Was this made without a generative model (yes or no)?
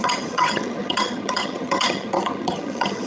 no